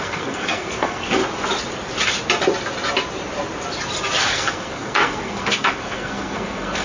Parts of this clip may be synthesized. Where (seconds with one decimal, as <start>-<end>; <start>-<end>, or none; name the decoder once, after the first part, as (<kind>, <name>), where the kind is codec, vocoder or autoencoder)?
0.0-1.2 (codec, SNAC); 4.2-6.8